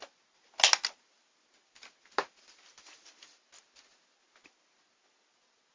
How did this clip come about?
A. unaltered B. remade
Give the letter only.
A